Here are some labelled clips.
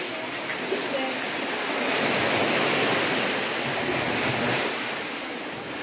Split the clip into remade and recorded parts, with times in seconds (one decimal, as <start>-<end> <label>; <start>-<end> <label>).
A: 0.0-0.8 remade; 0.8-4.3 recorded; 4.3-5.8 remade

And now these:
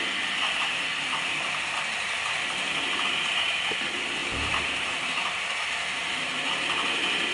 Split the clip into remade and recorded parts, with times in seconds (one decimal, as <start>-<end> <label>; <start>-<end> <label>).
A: 0.0-7.3 recorded

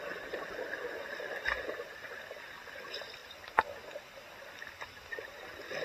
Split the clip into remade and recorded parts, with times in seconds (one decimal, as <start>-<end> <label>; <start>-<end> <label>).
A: 0.0-5.8 recorded